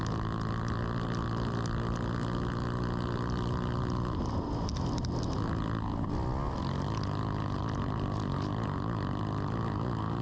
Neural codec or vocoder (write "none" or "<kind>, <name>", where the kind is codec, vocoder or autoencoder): none